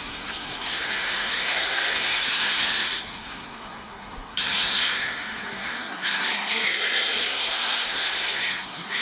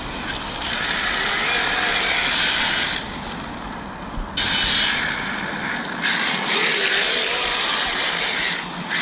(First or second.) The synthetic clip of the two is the first